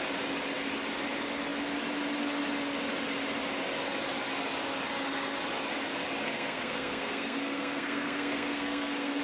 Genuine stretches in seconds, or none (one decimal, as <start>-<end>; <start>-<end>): 0.0-6.2